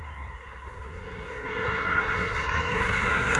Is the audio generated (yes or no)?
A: yes